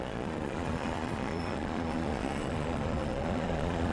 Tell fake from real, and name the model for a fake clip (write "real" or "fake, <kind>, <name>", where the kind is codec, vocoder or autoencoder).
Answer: fake, vocoder, Vocos